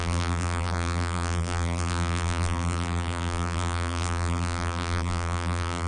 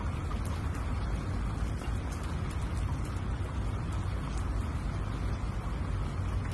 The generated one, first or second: first